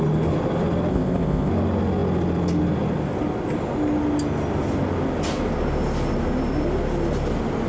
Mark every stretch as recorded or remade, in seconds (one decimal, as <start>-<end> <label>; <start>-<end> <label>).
0.0-0.9 recorded; 0.9-1.5 remade; 1.5-7.7 recorded